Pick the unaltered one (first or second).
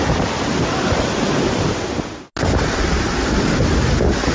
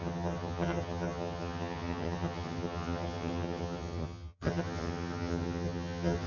first